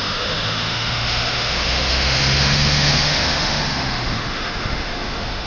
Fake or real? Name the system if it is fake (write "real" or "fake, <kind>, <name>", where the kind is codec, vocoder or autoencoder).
fake, autoencoder, DAC-VAE